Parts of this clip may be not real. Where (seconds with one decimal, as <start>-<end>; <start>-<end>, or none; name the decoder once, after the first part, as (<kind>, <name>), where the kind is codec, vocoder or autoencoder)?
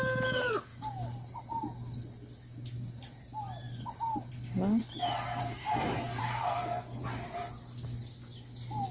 6.2-7.0 (codec, SNAC)